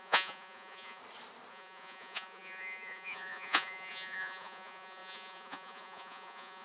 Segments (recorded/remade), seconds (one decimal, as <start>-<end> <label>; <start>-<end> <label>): 0.0-1.0 remade; 1.0-1.5 recorded; 1.5-6.6 remade